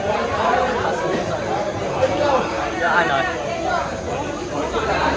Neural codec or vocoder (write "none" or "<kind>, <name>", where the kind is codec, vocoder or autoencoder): vocoder, BigVGAN v2